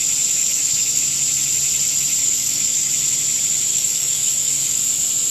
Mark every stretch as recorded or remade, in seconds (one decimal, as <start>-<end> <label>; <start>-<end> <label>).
0.0-0.4 recorded; 0.4-1.0 remade; 1.0-2.2 recorded; 2.2-2.9 remade; 2.9-3.7 recorded; 3.7-4.8 remade; 4.8-5.3 recorded